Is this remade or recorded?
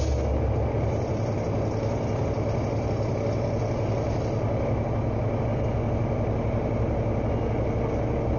recorded